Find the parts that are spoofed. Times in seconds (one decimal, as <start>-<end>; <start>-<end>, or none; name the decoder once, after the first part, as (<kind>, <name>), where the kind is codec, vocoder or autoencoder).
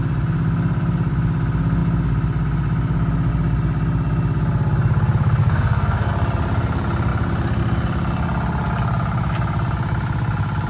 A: 5.4-6.1 (codec, SNAC)